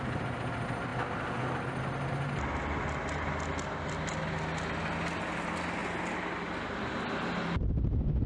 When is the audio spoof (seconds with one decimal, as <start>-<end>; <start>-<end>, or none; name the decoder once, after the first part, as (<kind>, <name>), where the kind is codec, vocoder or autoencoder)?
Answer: none